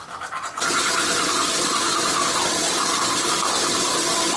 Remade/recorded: recorded